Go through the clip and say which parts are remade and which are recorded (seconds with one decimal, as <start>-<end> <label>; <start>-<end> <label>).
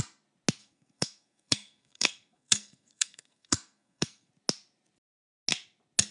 0.0-0.6 recorded; 0.6-4.3 remade; 4.3-6.1 recorded